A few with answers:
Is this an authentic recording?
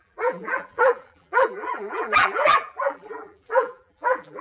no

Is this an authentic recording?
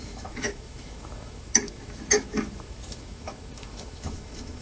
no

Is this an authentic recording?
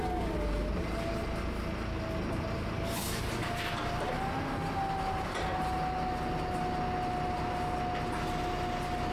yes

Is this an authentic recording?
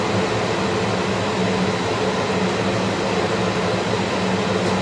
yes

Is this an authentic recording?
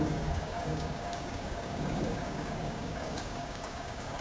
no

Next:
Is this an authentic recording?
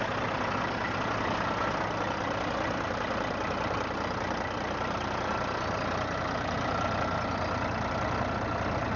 yes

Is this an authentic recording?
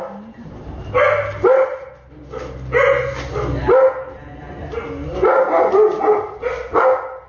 yes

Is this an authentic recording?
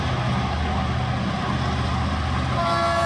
yes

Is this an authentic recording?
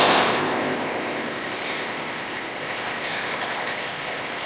no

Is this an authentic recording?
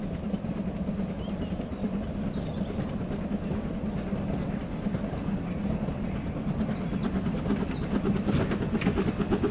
yes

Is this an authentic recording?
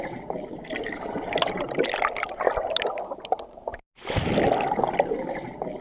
yes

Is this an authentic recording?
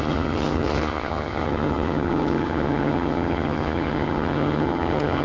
no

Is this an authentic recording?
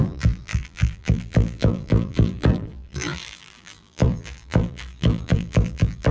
no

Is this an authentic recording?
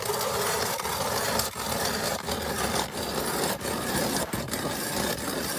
yes